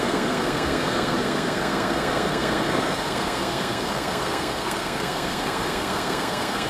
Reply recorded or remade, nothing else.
remade